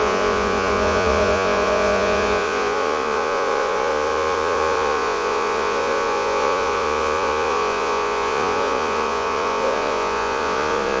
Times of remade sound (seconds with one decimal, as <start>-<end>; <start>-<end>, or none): 0.0-11.0